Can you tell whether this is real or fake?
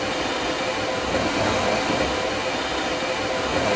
real